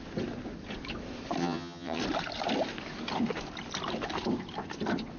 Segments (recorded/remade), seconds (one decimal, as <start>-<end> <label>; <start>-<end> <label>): 0.0-1.4 recorded; 1.4-2.0 remade; 2.0-5.2 recorded